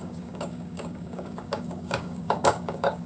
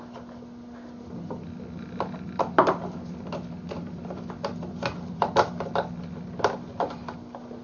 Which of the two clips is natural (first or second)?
second